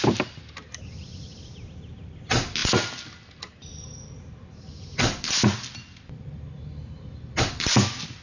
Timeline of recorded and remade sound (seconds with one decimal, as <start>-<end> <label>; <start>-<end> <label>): 0.0-8.2 recorded